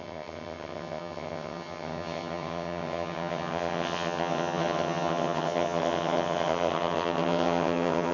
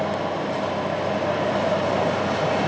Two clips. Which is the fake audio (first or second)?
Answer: first